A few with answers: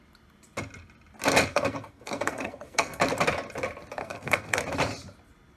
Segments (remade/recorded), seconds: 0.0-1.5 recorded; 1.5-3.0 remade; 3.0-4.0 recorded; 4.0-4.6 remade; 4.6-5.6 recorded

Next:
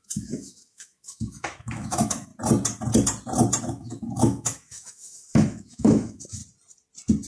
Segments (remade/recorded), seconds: 0.0-2.3 remade; 2.3-3.6 recorded; 3.6-6.4 remade; 6.4-7.3 recorded

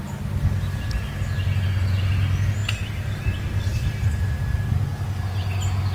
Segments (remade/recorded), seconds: 0.0-5.9 recorded

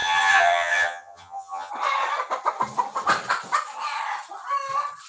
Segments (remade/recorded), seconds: 0.0-1.7 remade; 1.7-5.1 recorded

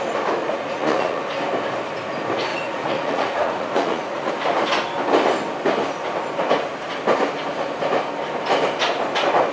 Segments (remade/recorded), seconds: 0.0-0.4 recorded; 0.4-1.2 remade; 1.2-2.5 recorded; 2.5-4.3 remade; 4.3-9.5 recorded